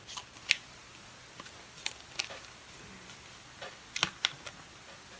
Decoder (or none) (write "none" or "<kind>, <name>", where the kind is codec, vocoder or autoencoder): none